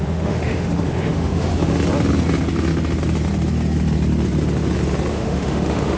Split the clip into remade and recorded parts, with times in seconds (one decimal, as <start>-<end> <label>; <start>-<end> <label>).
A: 0.0-1.5 remade; 1.5-5.1 recorded; 5.1-6.0 remade